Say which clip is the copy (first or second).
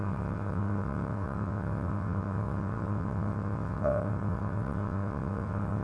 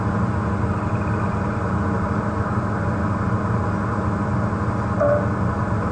first